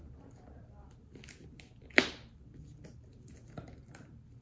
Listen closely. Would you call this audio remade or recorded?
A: recorded